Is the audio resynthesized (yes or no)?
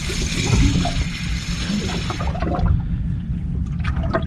no